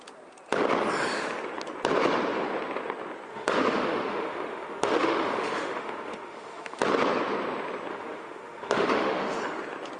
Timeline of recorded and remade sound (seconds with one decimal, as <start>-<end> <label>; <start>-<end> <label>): 0.0-3.3 recorded; 3.3-6.8 remade; 6.8-7.9 recorded; 7.9-9.4 remade; 9.4-10.0 recorded